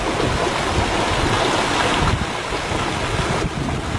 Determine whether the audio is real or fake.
real